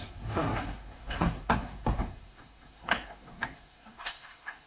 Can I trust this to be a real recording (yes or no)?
no